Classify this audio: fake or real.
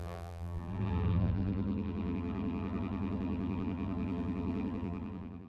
fake